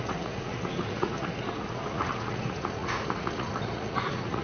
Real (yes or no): no